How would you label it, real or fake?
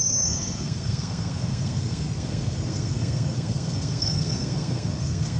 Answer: fake